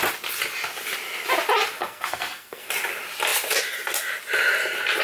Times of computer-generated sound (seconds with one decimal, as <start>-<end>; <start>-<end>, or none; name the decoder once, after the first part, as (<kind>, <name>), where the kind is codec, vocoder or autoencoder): 1.7-2.7 (codec, SNAC)